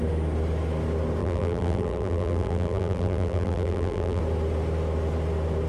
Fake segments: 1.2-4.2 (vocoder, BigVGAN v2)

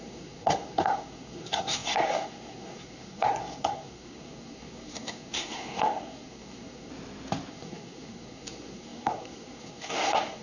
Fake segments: 0.0-6.9 (codec, SNAC); 7.5-10.4

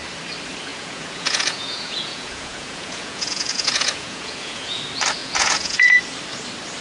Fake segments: 0.7-4.8 (vocoder, Vocos); 5.2-6.0